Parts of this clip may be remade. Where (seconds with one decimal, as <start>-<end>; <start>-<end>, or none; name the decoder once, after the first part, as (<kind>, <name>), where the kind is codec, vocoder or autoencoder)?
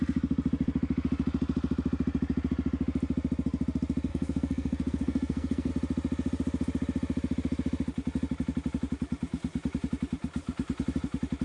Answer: 4.1-5.7 (codec, SNAC)